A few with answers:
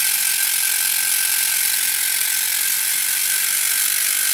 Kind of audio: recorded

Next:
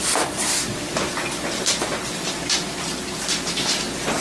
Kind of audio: remade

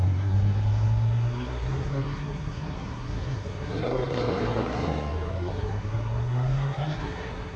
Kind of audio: remade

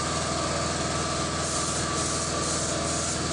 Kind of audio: recorded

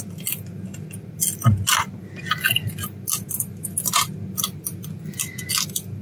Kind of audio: recorded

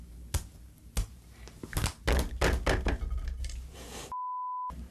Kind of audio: recorded